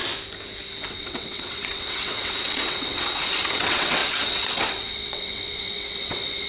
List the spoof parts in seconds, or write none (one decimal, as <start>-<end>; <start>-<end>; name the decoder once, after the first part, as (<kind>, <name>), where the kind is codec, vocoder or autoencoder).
0.9-6.5 (vocoder, WaveNeXt)